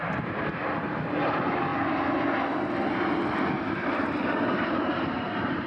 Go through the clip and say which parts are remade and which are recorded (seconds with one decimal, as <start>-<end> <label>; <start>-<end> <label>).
0.0-1.7 remade; 1.7-3.9 recorded; 3.9-5.7 remade